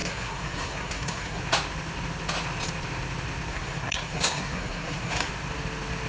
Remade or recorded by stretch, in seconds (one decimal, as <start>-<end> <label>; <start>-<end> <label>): 0.0-1.4 remade; 1.4-3.5 recorded; 3.5-5.3 remade; 5.3-6.1 recorded